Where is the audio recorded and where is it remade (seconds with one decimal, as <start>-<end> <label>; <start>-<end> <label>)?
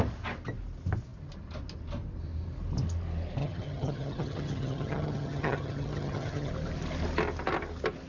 0.0-3.4 recorded; 3.4-6.5 remade; 6.5-8.1 recorded